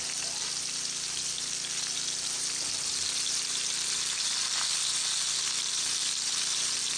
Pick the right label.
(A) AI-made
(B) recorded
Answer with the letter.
B